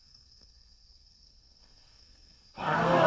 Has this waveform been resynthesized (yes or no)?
yes